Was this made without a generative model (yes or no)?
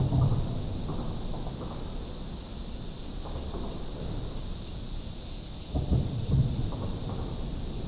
yes